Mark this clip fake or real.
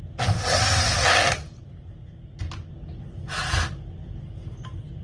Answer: real